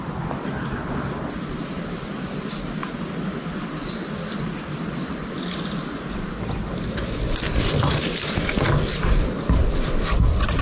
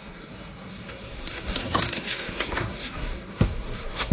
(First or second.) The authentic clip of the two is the first